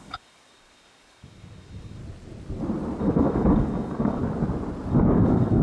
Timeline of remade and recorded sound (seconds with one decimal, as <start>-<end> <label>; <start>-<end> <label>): 0.0-2.0 remade; 2.0-3.0 recorded; 3.0-4.2 remade; 4.2-4.9 recorded; 4.9-5.6 remade